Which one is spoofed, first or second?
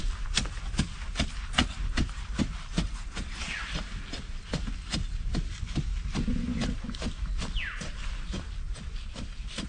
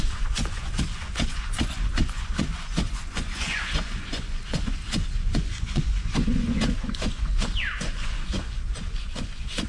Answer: second